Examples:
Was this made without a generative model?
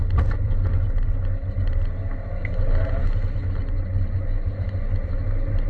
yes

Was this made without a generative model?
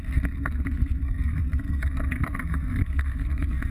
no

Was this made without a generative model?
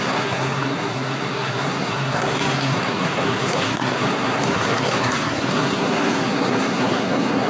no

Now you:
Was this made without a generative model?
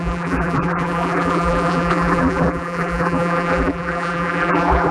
no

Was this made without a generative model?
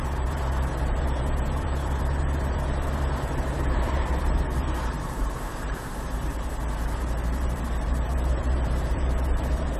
no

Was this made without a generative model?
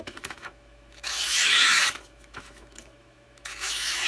no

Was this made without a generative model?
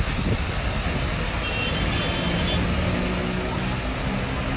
yes